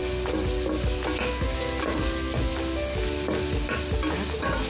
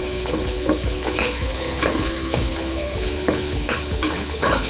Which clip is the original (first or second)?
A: first